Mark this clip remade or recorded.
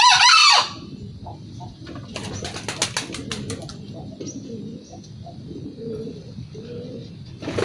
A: recorded